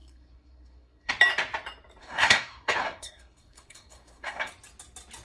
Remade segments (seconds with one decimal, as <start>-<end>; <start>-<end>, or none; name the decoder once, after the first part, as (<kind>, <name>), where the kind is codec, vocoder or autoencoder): 0.0-1.1 (codec, SNAC); 2.0-4.5

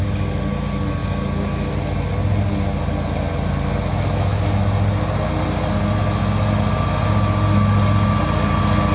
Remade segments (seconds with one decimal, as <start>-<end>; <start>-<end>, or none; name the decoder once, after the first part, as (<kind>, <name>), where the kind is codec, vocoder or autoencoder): none

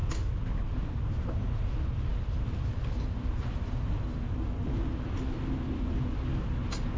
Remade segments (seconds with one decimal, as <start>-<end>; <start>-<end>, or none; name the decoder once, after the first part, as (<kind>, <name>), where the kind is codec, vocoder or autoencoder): 2.1-3.7 (vocoder, BigVGAN v2)